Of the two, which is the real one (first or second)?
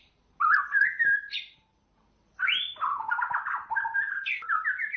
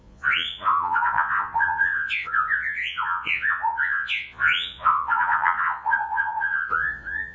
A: first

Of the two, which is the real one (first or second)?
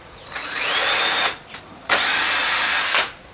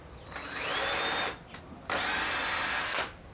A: second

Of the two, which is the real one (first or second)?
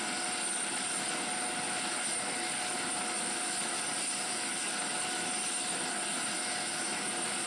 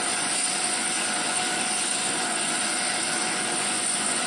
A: first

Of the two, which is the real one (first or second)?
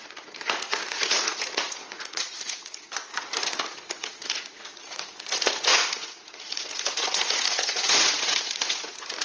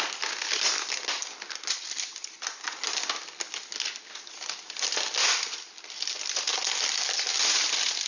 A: second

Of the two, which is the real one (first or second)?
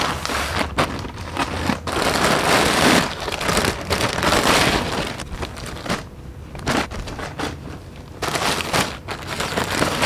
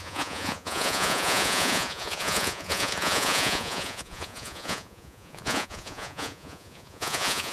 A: first